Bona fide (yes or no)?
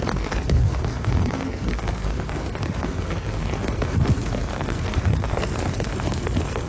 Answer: no